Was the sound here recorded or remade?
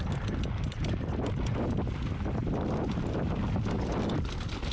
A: recorded